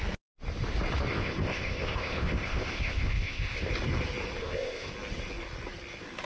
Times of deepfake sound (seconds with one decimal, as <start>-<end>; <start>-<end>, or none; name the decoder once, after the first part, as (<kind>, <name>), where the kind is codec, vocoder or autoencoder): 1.1-3.7 (codec, ZipCodec); 4.4-4.9